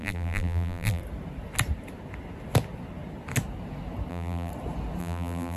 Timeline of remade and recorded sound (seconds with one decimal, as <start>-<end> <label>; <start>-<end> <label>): 0.0-1.0 remade; 1.0-4.1 recorded; 4.1-4.5 remade; 4.5-5.0 recorded; 5.0-5.6 remade